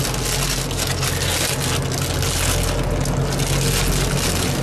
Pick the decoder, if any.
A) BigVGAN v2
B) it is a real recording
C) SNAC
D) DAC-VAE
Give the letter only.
B